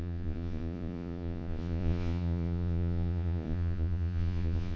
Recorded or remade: remade